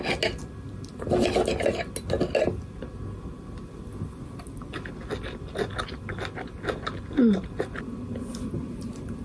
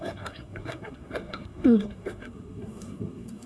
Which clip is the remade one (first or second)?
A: second